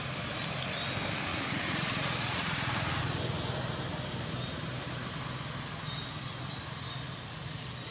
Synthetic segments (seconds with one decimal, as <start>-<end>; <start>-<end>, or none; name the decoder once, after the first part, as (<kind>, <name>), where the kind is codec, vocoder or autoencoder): 1.3-3.0 (vocoder, Vocos)